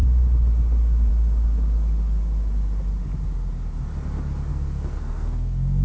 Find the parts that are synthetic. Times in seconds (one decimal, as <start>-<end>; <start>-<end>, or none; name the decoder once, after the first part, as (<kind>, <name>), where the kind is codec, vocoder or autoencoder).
4.5-5.8 (codec, SNAC)

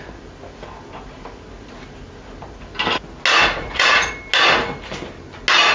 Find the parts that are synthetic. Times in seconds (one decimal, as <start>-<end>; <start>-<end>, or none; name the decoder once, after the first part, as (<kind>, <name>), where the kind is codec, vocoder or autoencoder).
3.4-4.1 (vocoder, Vocos)

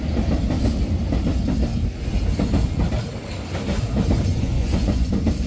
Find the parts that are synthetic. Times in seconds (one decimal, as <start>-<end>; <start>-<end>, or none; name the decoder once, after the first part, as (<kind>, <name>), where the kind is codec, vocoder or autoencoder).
4.3-5.1 (vocoder, Vocos)

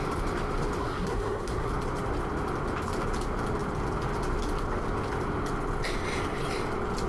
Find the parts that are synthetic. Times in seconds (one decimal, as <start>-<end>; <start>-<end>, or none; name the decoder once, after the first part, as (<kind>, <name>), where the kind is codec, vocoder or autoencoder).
0.8-1.7 (codec, SNAC)